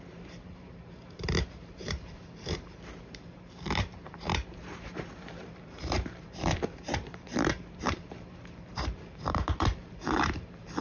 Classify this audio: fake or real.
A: fake